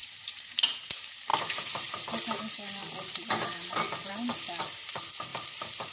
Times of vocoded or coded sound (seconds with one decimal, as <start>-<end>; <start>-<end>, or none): 0.0-0.8; 1.3-2.4; 2.8-4.1; 5.3-5.9